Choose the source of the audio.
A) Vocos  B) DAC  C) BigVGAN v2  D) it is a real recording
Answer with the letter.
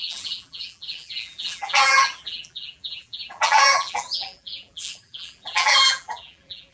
C